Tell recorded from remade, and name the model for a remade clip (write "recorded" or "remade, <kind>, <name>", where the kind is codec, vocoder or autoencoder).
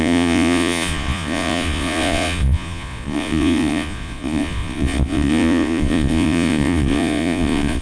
remade, vocoder, Vocos